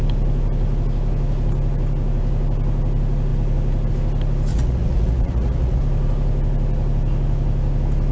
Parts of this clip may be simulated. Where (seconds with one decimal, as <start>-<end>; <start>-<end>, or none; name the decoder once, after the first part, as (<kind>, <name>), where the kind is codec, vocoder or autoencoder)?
4.5-5.8 (vocoder, Vocos)